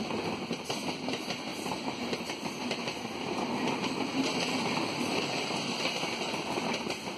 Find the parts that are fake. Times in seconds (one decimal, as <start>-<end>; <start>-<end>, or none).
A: 1.5-2.3